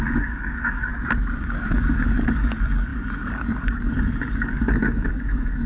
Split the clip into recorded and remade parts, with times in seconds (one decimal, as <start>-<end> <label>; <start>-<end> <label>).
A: 0.0-0.9 remade; 0.9-1.4 recorded; 1.4-5.7 remade